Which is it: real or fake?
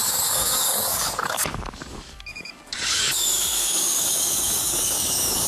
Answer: fake